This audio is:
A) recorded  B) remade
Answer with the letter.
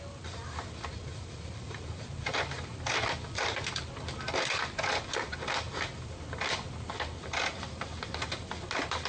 B